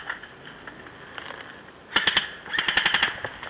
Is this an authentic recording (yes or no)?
yes